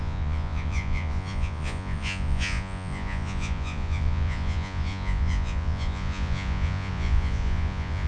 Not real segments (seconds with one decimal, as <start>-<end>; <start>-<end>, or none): 0.0-8.1